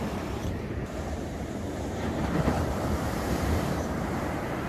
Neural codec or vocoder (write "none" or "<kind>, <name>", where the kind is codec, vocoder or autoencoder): vocoder, BigVGAN v2